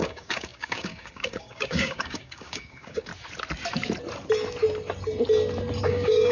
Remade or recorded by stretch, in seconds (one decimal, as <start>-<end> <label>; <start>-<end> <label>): 0.0-3.1 remade; 3.1-5.8 recorded; 5.8-6.3 remade